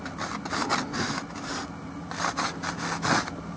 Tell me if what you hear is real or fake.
real